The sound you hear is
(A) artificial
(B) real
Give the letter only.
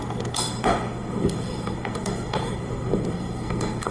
A